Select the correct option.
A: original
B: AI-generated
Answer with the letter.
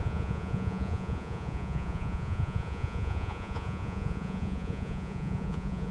B